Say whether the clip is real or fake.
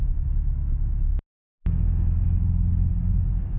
real